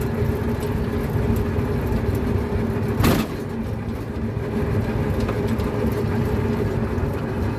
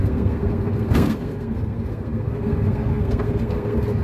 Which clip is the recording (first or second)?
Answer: first